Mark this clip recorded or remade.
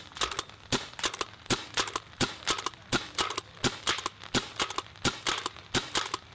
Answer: recorded